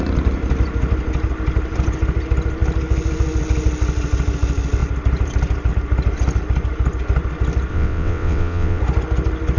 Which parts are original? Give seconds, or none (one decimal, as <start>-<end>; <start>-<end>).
0.0-7.7; 8.8-9.6